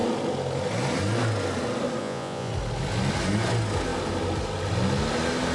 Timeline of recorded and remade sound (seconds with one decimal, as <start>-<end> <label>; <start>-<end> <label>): 0.0-2.0 recorded; 2.0-2.5 remade; 2.5-5.5 recorded